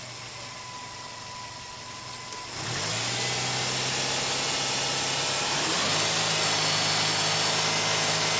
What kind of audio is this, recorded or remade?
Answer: recorded